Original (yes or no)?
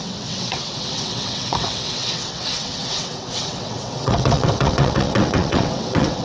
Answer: no